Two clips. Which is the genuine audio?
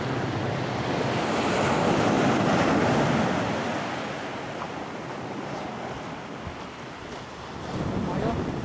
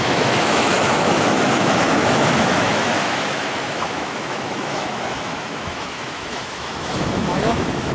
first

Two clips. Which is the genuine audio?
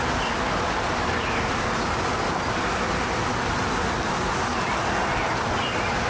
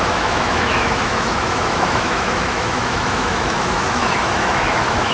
first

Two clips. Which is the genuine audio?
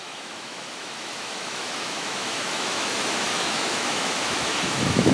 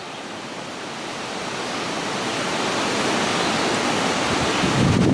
second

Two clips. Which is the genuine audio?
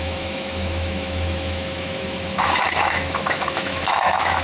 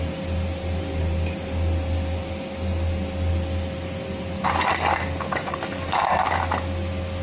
second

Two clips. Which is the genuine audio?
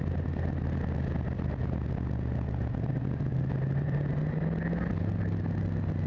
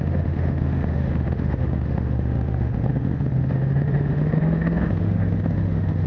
first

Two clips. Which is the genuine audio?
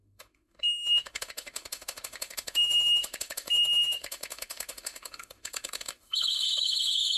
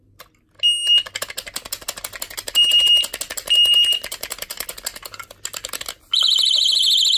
second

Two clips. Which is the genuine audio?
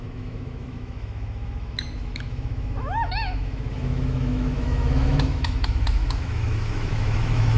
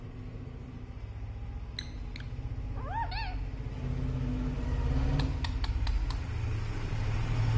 second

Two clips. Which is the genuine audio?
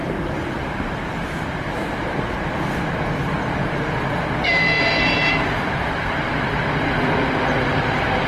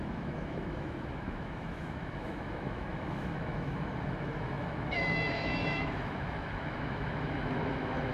first